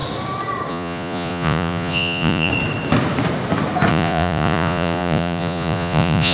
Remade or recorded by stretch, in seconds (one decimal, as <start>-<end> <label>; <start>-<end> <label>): 0.0-0.7 recorded; 0.7-2.5 remade; 2.5-3.9 recorded; 3.9-6.3 remade